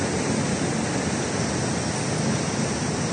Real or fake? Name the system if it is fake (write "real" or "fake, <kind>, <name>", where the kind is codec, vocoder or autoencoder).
real